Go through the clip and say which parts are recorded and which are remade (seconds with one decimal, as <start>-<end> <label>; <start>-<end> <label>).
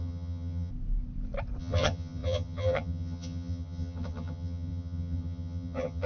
0.0-0.7 remade; 0.7-1.6 recorded; 1.6-6.1 remade